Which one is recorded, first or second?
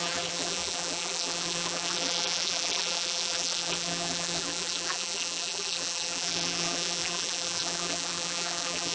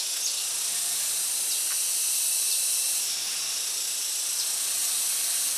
second